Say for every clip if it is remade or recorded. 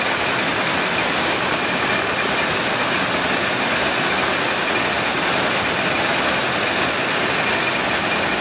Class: recorded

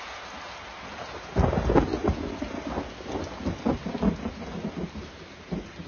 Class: recorded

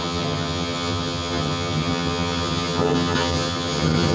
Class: remade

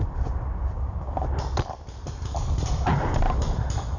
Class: recorded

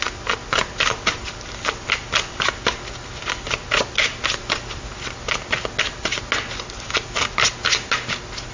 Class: recorded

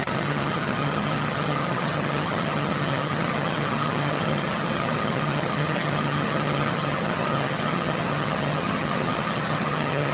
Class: remade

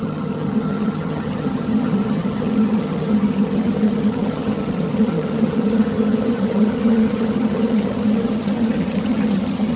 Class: remade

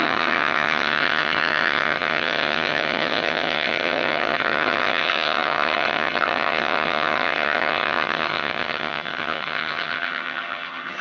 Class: remade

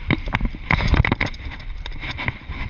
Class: recorded